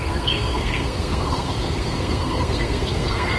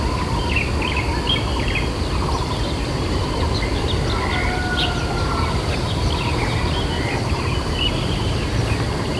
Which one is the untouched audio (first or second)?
second